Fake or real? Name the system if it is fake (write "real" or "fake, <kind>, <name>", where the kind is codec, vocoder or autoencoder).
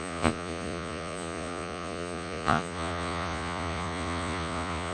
fake, vocoder, Vocos